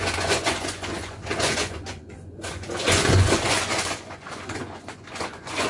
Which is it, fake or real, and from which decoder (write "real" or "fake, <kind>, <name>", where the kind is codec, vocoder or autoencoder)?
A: fake, vocoder, Vocos